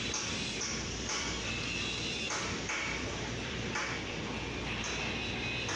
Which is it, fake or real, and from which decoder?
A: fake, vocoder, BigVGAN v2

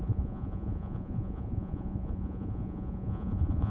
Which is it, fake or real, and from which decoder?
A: fake, vocoder, Vocos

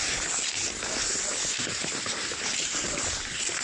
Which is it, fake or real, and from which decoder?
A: real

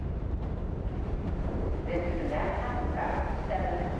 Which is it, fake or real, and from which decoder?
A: fake, vocoder, BigVGAN v2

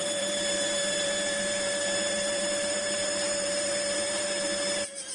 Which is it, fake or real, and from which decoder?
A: fake, vocoder, BigVGAN v2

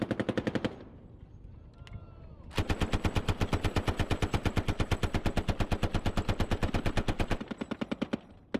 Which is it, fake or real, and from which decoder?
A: real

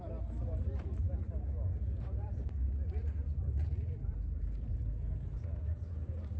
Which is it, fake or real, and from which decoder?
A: fake, vocoder, BigVGAN v2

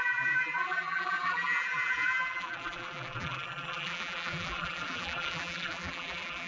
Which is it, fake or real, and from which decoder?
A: fake, vocoder, BigVGAN v2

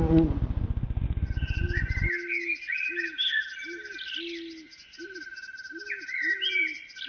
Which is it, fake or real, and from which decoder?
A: real